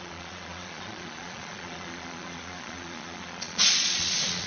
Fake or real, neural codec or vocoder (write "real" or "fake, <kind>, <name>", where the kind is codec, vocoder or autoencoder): fake, vocoder, Vocos